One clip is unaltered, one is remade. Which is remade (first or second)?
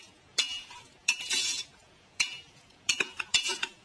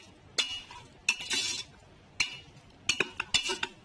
first